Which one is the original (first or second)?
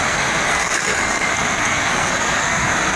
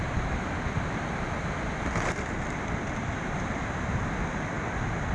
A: second